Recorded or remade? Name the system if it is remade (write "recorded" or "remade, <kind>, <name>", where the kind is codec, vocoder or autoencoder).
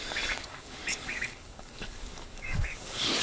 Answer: remade, codec, DAC